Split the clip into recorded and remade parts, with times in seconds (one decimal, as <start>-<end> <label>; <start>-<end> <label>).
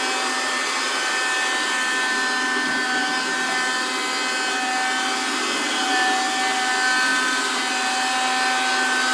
0.0-9.1 recorded